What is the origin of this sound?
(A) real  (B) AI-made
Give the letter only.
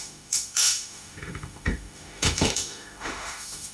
B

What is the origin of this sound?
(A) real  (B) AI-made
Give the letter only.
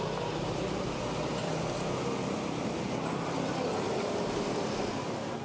A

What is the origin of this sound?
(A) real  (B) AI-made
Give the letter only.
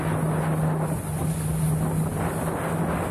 A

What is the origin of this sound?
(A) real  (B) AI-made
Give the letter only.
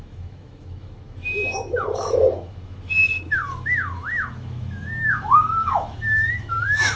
B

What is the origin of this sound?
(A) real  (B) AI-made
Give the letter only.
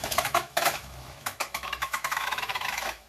B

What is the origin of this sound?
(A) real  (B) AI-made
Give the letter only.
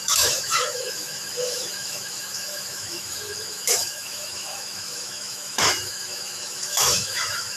B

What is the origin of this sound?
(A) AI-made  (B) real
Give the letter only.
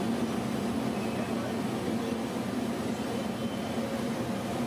B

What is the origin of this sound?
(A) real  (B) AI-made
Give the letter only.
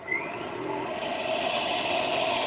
A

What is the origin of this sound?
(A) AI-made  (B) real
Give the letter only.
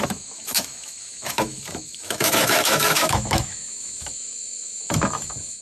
A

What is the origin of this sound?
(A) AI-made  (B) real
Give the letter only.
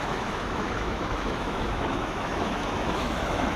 A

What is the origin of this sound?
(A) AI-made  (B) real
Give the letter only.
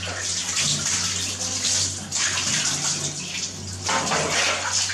B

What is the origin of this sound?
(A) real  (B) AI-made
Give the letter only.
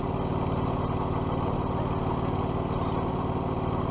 A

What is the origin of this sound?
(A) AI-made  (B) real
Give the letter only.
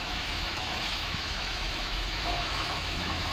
A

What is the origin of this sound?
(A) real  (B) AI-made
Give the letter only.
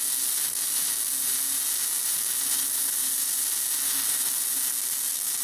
A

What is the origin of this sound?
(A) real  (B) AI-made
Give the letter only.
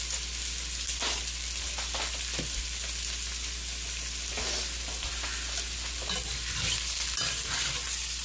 A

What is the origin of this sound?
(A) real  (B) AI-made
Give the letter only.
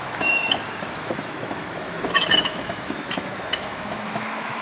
B